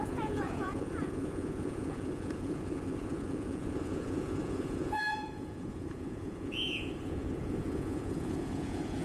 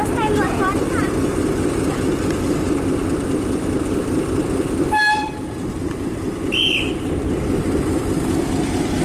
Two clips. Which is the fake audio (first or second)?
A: first